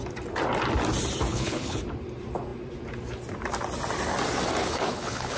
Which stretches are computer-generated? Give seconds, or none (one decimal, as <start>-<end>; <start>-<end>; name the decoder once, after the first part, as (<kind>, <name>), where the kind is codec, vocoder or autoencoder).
1.3-1.8 (codec, HILCodec); 4.6-5.4